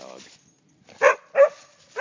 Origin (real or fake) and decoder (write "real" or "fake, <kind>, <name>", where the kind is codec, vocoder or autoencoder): fake, vocoder, BigVGAN v2